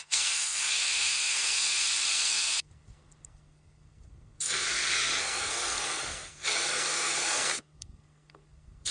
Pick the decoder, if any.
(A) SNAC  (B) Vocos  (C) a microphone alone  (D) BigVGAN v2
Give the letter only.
A